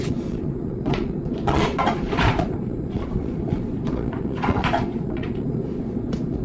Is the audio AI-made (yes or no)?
yes